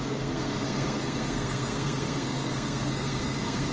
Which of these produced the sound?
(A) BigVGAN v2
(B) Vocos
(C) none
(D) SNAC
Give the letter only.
D